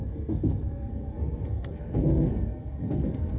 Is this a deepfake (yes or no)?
yes